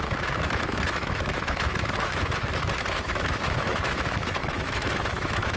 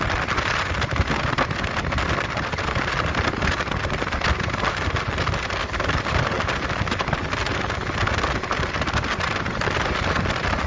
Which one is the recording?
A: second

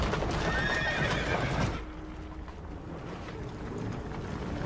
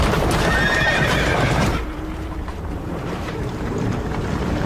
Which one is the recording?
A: first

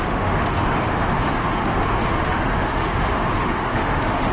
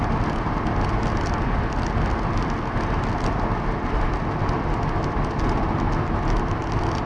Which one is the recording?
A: second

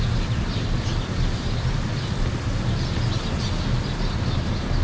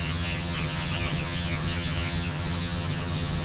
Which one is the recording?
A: first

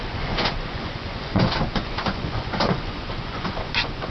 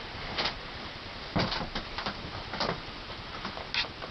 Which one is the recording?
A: second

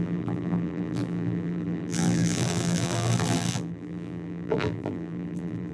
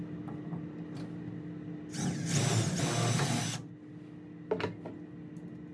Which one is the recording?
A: second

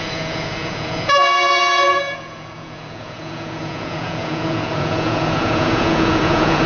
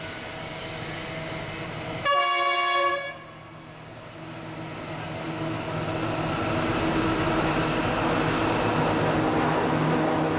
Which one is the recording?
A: second